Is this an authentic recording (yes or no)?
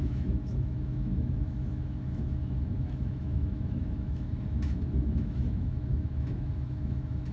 no